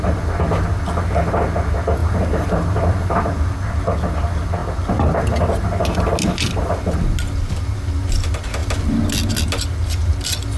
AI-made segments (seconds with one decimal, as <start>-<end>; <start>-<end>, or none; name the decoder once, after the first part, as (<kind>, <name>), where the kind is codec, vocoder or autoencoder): 2.0-3.5 (vocoder, BigVGAN v2)